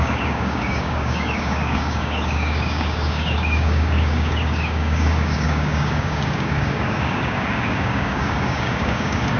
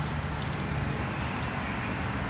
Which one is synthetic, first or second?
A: first